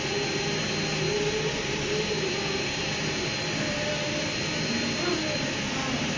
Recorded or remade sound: recorded